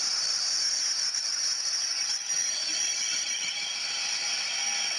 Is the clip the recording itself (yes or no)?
yes